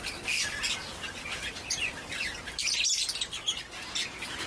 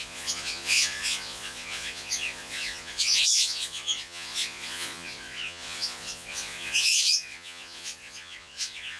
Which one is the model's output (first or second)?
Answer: second